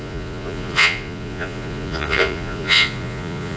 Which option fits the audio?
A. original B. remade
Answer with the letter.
B